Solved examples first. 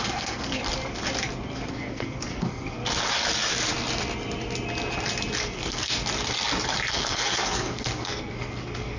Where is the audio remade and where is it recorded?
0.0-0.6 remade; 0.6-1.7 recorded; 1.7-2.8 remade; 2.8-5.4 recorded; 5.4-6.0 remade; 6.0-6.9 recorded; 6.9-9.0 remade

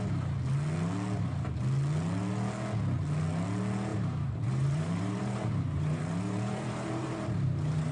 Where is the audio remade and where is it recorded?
0.0-3.9 recorded; 3.9-7.9 remade

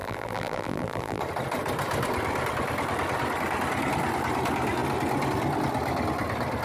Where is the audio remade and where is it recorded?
0.0-1.2 remade; 1.2-6.6 recorded

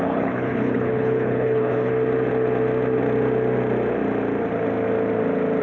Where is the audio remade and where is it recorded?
0.0-1.9 remade; 1.9-5.6 recorded

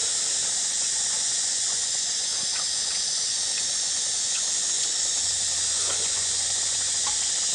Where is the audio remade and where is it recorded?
0.0-0.6 recorded; 0.6-7.5 remade